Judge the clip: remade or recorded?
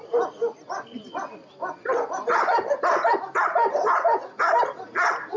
recorded